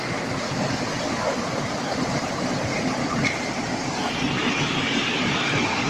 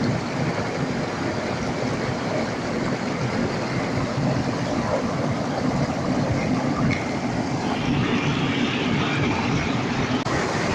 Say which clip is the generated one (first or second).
first